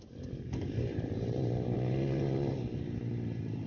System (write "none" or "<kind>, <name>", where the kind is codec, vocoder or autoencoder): vocoder, BigVGAN v2